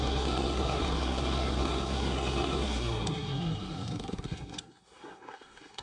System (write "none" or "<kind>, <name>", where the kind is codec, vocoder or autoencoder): codec, SNAC